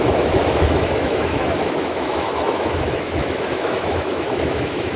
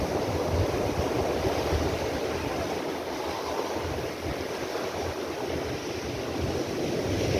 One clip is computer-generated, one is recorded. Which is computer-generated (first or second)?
first